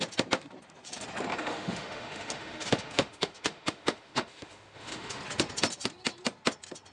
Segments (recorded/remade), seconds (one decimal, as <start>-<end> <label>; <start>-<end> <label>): 0.0-1.3 recorded; 1.3-5.2 remade; 5.2-6.9 recorded